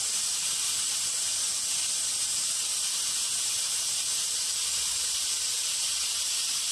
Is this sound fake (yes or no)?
no